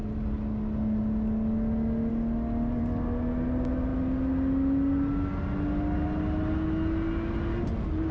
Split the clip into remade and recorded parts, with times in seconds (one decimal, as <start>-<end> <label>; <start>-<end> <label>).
0.0-8.1 recorded